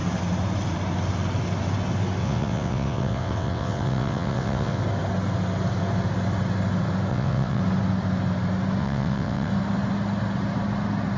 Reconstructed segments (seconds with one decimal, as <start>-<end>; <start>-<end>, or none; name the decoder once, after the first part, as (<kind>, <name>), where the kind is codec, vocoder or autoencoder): 2.2-4.8 (vocoder, WaveNeXt); 7.1-7.6; 8.8-9.5